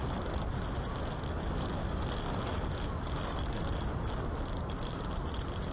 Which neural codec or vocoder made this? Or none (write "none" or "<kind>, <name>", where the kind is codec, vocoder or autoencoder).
none